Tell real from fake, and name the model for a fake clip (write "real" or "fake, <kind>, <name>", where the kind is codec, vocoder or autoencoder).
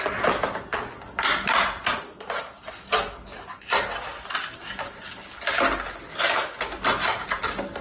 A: real